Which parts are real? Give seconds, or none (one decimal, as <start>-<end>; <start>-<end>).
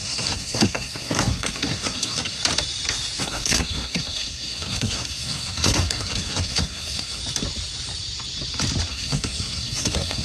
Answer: 2.4-3.2; 7.2-8.9